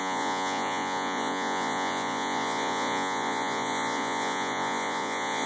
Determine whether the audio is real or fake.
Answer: fake